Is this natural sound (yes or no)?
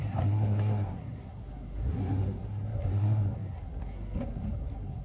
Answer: no